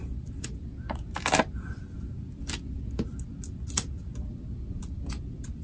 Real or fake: real